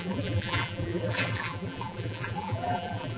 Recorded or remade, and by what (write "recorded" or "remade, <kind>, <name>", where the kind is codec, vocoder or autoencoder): remade, vocoder, BigVGAN v2